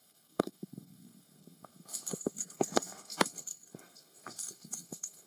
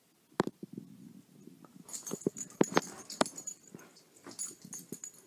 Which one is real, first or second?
second